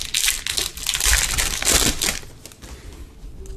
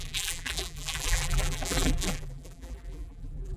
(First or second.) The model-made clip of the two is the second